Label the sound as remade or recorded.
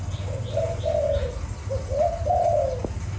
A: recorded